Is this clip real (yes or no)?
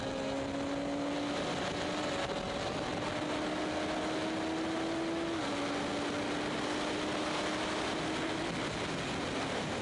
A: yes